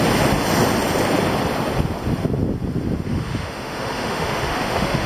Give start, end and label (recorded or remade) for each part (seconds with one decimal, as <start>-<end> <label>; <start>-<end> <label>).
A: 0.0-3.1 recorded; 3.1-5.1 remade